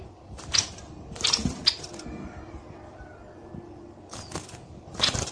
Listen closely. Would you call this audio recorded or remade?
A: recorded